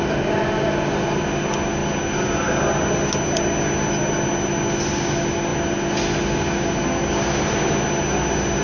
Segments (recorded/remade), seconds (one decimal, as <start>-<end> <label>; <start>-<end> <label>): 0.0-8.6 recorded